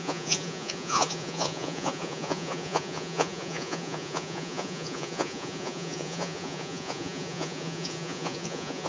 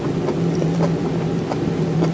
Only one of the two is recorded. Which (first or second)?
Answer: second